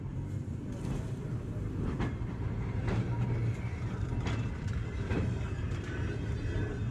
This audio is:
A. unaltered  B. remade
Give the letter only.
B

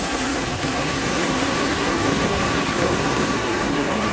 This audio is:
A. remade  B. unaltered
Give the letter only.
A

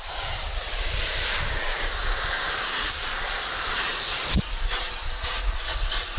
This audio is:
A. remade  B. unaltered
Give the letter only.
A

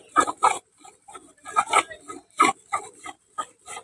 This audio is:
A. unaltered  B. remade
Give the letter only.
A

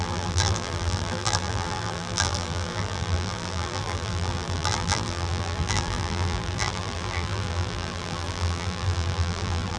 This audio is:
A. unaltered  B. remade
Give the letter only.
B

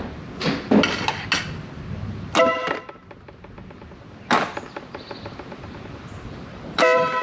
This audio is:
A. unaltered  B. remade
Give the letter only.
A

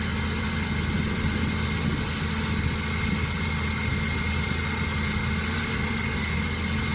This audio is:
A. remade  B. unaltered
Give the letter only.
B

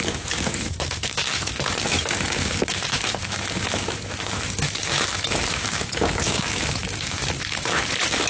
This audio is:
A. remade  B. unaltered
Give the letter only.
A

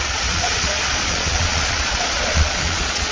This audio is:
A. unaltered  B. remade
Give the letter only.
B